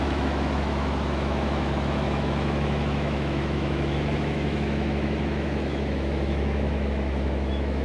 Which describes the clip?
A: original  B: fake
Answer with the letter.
B